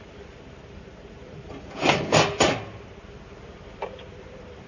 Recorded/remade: remade